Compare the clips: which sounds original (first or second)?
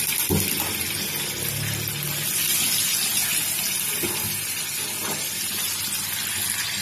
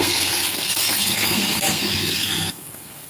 first